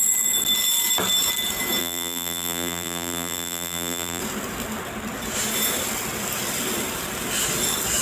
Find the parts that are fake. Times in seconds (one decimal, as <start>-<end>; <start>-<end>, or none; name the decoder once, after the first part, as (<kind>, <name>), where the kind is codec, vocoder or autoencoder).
1.8-4.2 (vocoder, BigVGAN v2)